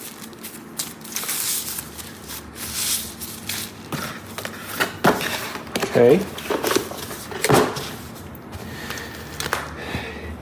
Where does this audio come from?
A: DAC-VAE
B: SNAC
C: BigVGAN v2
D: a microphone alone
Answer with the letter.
D